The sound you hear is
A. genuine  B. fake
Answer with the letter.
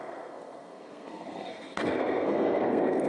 B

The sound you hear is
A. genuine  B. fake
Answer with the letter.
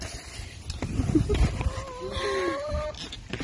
A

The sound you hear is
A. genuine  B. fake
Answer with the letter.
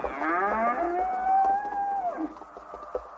A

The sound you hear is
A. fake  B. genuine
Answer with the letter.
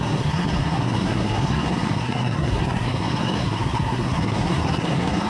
A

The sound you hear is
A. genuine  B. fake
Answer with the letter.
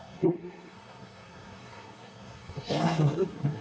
B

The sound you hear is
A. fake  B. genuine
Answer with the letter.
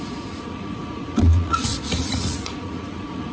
A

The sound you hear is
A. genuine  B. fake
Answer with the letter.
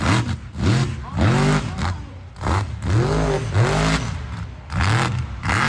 A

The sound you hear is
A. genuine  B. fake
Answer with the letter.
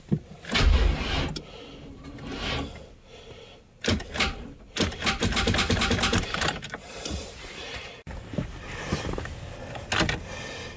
A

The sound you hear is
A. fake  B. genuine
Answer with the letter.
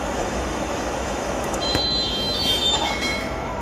A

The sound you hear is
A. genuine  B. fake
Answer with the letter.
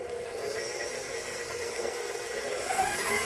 B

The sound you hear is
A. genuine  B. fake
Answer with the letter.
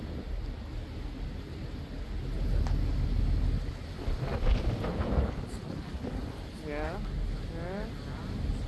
A